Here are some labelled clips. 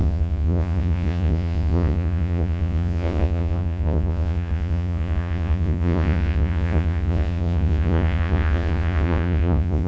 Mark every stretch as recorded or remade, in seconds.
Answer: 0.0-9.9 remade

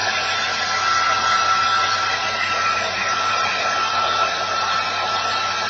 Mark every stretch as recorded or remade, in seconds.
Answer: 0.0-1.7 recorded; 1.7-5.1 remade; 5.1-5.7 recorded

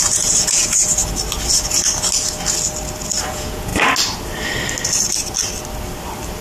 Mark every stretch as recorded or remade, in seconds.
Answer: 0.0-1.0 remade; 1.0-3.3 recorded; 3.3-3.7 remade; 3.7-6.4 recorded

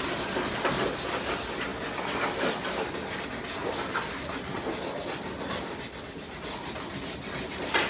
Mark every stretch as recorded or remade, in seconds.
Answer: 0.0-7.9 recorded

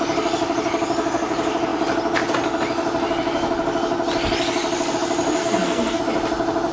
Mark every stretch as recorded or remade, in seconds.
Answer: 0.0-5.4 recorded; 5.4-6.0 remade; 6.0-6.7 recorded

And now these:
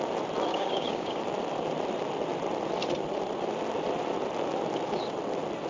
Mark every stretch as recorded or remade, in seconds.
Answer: 0.0-0.5 recorded; 0.5-1.2 remade; 1.2-5.7 recorded